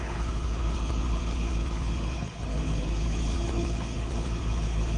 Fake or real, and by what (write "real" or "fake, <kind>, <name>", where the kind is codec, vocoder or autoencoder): fake, codec, HILCodec